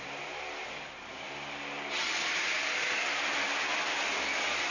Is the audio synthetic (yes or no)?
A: no